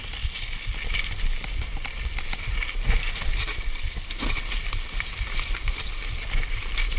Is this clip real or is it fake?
real